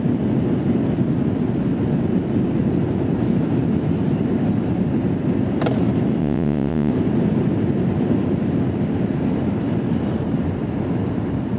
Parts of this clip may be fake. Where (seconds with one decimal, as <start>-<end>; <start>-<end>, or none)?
6.2-6.9